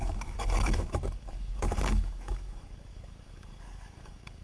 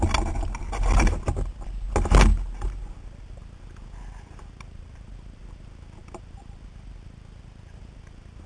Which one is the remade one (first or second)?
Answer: first